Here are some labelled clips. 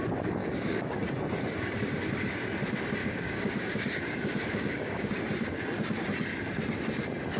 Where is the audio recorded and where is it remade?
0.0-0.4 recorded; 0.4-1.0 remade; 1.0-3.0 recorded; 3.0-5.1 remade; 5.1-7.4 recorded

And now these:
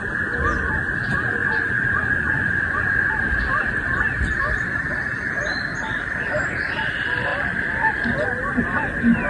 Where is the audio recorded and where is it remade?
0.0-1.4 recorded; 1.4-3.1 remade; 3.1-9.3 recorded